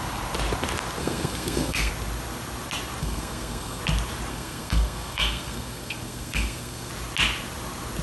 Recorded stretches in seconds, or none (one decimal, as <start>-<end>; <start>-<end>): 0.0-1.0; 1.9-3.0; 3.8-4.3; 6.9-8.0